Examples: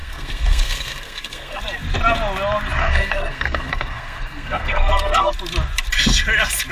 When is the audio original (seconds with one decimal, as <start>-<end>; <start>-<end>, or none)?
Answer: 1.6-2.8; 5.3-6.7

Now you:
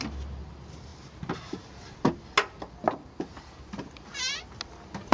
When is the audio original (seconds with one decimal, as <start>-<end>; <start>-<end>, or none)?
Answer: 0.0-5.1

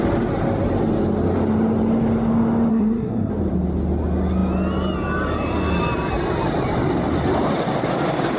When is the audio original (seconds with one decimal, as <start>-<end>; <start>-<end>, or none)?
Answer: 0.0-2.7; 3.3-8.4

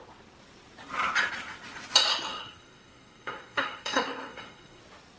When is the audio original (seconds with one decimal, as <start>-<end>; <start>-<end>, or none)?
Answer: 0.0-2.3; 4.8-5.2

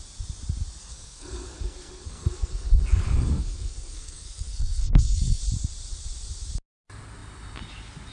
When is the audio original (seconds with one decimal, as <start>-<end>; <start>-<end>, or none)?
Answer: 0.0-0.8; 5.4-8.1

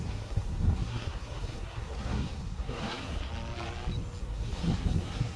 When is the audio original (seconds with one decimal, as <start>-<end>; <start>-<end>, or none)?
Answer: 3.3-4.2

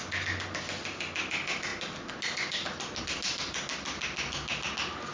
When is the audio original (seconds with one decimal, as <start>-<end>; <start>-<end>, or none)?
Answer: 0.0-5.1